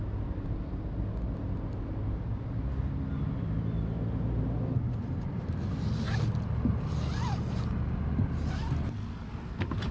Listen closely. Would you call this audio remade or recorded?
recorded